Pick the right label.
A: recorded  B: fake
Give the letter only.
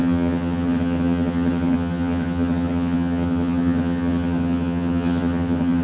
B